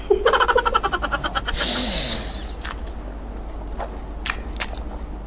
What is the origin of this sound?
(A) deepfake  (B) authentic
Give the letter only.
B